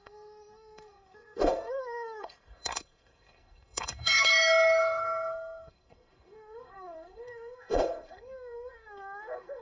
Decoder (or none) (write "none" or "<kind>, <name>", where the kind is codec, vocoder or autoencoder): codec, SNAC